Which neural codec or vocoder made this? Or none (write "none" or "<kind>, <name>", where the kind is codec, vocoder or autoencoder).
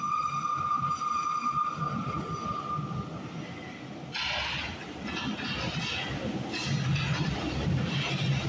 none